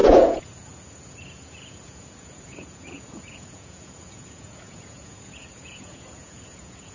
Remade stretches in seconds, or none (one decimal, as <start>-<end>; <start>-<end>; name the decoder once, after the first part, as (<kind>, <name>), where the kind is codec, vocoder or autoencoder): 0.0-6.9 (vocoder, Vocos)

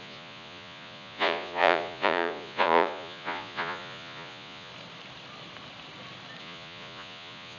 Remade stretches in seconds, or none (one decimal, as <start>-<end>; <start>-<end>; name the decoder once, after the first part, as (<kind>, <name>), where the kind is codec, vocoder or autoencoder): 0.0-4.7 (vocoder, Vocos); 6.4-7.6

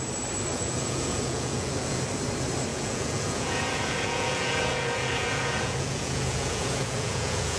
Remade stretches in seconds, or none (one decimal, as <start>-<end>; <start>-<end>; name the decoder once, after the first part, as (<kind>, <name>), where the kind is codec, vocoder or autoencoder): 0.5-2.0 (vocoder, Vocos); 2.7-7.6

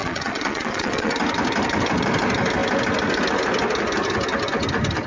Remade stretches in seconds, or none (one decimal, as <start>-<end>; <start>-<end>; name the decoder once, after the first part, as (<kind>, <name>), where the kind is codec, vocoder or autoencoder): 0.0-1.1 (vocoder, Vocos)